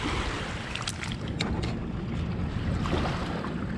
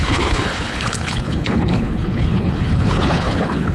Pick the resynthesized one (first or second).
second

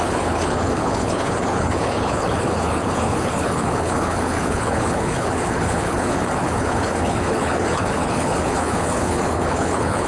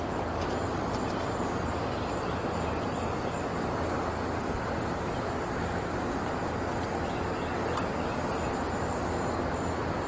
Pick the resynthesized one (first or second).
first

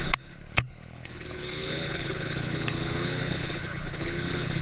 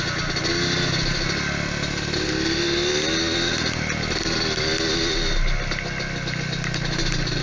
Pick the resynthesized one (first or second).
first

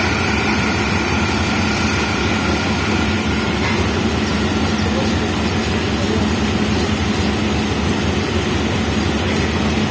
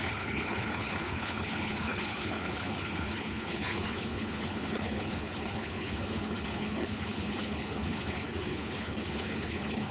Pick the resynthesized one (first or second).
second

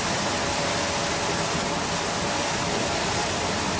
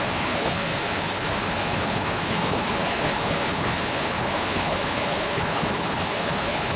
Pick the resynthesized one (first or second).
second